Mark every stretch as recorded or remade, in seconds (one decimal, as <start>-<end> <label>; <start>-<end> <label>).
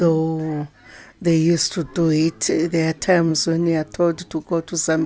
0.0-5.1 recorded